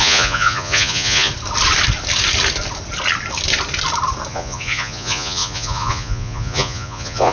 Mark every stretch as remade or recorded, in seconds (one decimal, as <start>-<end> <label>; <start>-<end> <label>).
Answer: 0.0-1.3 remade; 1.3-4.3 recorded; 4.3-7.3 remade